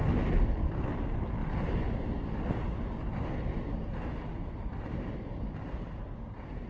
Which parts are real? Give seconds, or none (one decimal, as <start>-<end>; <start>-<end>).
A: 0.0-6.7